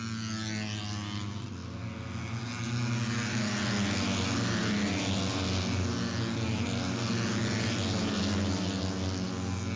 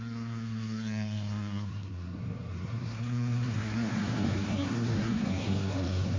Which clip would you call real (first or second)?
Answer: first